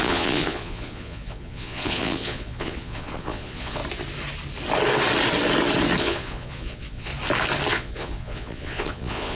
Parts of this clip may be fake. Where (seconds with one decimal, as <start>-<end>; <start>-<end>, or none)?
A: 0.0-3.8; 6.0-7.1; 7.7-9.4